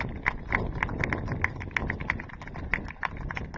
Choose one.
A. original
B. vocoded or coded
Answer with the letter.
A